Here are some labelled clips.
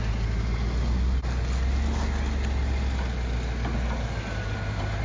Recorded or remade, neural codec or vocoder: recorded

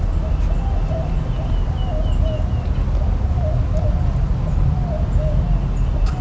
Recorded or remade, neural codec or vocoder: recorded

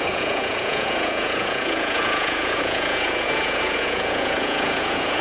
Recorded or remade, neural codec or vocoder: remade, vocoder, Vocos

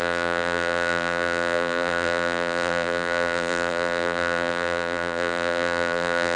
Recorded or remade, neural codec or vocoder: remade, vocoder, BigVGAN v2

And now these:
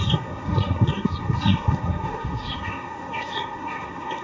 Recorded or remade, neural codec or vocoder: remade, codec, SNAC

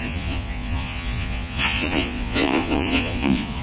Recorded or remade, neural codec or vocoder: remade, vocoder, Vocos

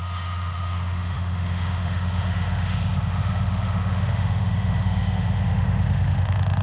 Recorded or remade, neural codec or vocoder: remade, autoencoder, DAC-VAE